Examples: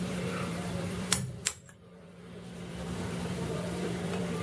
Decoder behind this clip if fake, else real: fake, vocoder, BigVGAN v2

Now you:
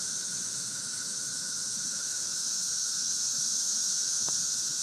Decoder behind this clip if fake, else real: fake, autoencoder, DAC-VAE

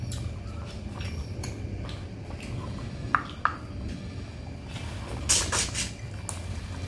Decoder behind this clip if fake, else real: real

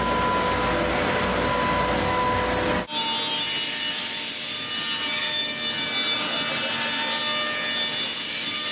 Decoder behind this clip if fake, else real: real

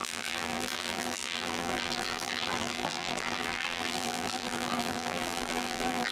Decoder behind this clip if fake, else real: fake, vocoder, BigVGAN v2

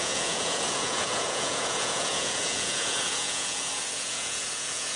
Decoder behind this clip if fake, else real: fake, vocoder, Vocos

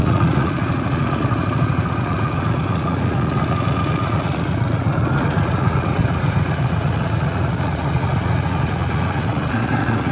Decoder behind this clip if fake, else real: fake, vocoder, Vocos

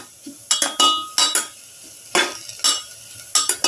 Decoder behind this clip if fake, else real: real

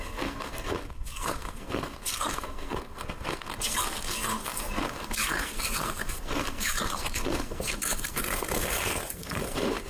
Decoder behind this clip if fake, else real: fake, codec, SNAC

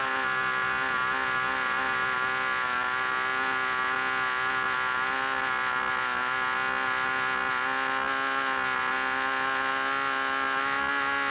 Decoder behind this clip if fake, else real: real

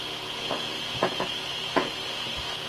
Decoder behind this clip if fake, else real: fake, vocoder, Vocos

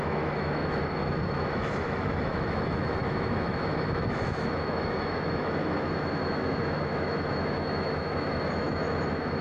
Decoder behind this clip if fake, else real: fake, autoencoder, DAC-VAE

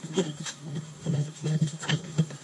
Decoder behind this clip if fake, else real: fake, codec, SNAC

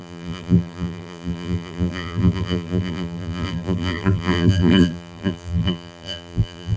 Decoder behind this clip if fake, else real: fake, vocoder, BigVGAN v2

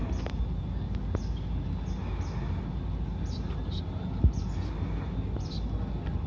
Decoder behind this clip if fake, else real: real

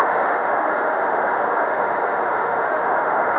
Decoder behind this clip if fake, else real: fake, autoencoder, DAC-VAE